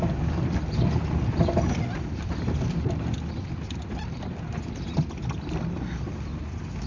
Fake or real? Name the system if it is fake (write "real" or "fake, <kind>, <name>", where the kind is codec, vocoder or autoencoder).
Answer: real